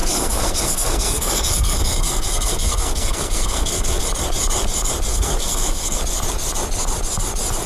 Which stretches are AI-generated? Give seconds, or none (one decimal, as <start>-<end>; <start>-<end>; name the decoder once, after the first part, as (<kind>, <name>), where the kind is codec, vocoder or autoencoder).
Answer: 0.0-4.0 (codec, SNAC); 5.1-6.0